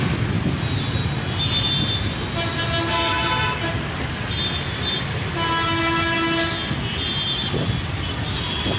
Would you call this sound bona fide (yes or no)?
yes